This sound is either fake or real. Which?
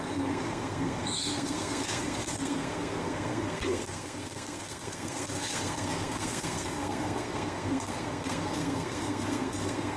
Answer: fake